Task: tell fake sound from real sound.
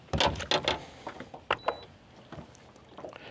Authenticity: real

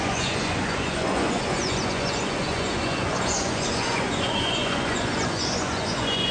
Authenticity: fake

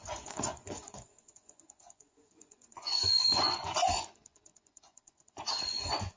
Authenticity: fake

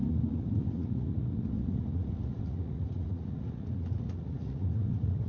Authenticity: fake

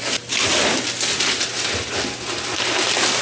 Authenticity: real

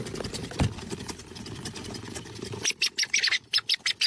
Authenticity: fake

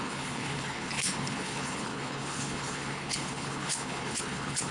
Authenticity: fake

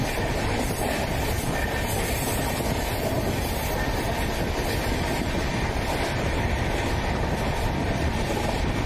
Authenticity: real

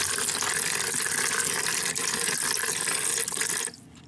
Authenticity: real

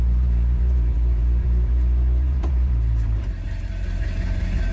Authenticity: fake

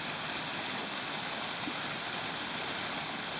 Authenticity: real